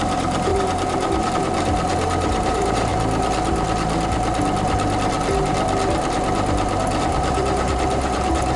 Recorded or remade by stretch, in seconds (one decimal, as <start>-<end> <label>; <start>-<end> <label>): 0.0-2.9 remade; 2.9-7.0 recorded; 7.0-8.6 remade